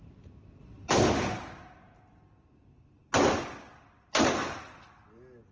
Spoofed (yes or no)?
no